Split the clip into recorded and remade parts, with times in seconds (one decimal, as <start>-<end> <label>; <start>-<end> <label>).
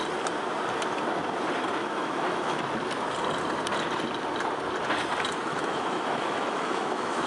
0.0-1.8 recorded; 1.8-2.6 remade; 2.6-5.5 recorded; 5.5-7.3 remade